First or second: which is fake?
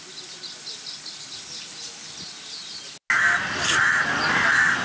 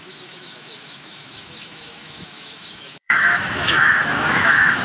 second